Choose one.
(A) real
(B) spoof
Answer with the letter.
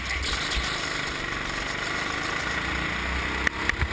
A